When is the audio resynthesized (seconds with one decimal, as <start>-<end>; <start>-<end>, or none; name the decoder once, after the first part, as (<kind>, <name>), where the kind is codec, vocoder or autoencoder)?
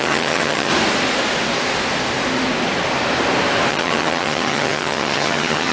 0.0-0.7 (vocoder, HiFi-GAN); 3.7-5.7